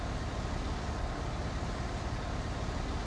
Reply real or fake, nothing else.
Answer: real